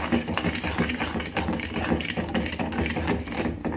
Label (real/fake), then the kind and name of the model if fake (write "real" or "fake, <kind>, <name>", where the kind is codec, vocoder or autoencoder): real